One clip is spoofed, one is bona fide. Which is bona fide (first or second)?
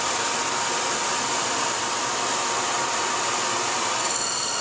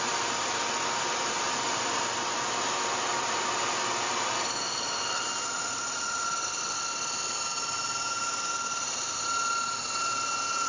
second